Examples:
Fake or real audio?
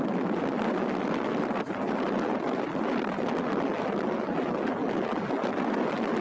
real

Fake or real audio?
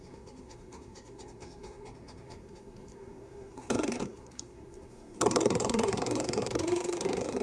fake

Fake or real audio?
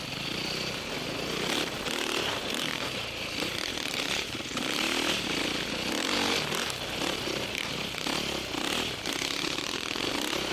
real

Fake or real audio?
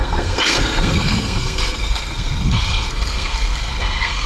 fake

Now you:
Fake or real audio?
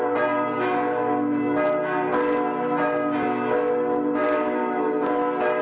real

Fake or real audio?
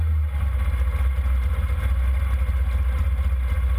real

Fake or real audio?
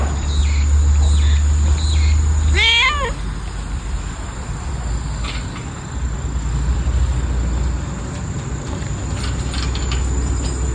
real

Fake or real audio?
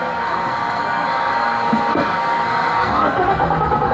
fake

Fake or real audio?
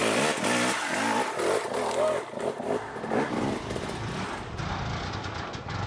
real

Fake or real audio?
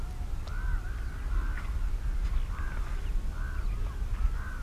real